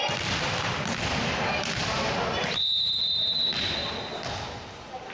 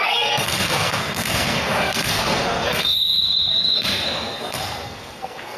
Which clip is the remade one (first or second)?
second